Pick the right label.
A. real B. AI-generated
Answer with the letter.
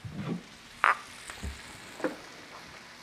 A